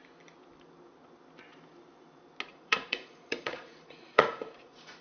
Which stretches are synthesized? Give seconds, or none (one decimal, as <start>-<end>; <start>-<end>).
2.5-5.0